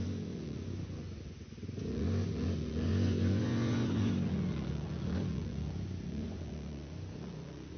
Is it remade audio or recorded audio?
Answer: remade